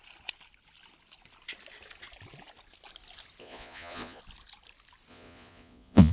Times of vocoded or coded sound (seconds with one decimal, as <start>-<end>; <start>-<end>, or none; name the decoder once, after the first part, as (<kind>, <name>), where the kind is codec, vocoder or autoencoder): 3.4-4.2 (vocoder, Vocos); 5.1-6.1